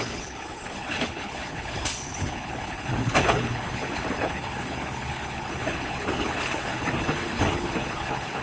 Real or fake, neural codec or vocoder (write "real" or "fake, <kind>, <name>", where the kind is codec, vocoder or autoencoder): fake, codec, HILCodec